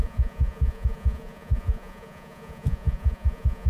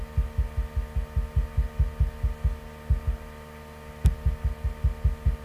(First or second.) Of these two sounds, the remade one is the first